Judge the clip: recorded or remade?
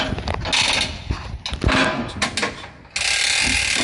recorded